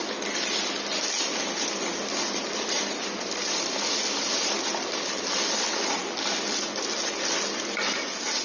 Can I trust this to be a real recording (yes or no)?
yes